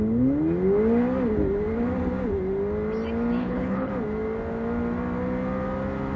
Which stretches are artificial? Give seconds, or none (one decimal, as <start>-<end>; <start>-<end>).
3.4-3.9